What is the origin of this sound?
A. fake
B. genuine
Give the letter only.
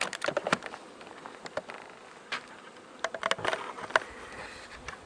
B